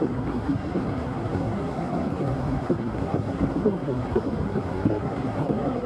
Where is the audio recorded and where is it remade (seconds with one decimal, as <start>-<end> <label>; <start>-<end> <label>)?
0.0-5.9 remade